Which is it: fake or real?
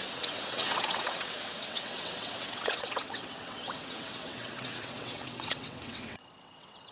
fake